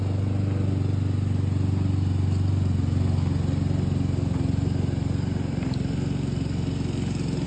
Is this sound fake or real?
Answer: real